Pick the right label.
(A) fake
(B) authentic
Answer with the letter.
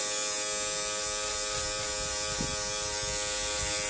B